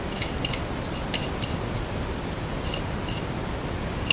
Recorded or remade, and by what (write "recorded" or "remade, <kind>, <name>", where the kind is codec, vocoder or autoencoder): recorded